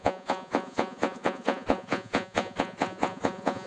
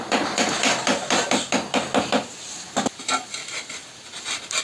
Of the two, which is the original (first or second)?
second